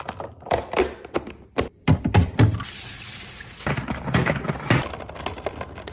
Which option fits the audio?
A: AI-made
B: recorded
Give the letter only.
B